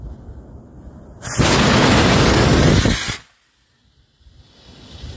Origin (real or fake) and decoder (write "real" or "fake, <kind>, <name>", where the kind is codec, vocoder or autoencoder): real